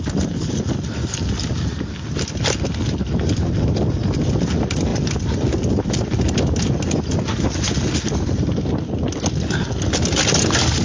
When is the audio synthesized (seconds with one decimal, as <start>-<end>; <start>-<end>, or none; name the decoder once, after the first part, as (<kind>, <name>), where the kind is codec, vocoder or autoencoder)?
none